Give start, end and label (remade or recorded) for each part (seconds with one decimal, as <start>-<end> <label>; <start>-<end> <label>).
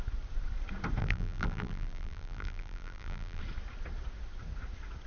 0.0-1.0 recorded; 1.0-3.4 remade; 3.4-5.1 recorded